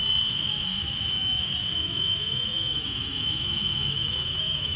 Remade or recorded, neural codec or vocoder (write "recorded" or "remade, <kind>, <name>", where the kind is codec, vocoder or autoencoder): remade, autoencoder, DAC-VAE